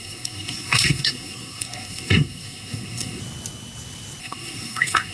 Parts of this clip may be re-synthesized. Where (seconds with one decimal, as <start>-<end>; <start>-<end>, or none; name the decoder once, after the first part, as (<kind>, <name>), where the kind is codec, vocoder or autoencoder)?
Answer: 0.0-3.2 (codec, SNAC); 4.2-5.1